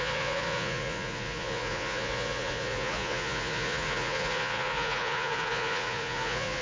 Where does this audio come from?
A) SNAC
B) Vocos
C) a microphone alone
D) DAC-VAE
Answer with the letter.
B